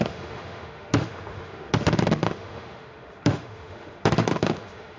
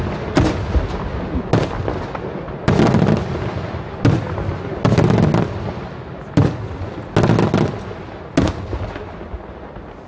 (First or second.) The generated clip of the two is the first